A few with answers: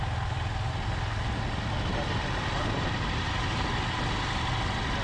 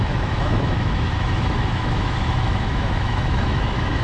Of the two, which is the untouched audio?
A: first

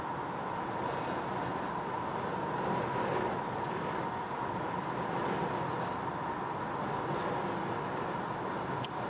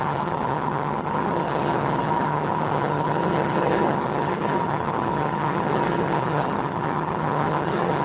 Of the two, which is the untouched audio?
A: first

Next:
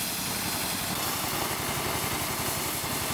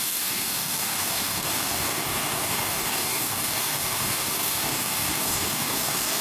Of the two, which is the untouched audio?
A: first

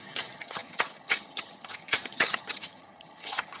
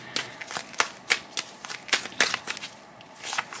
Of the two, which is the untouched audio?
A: second